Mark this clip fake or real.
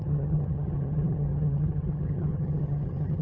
fake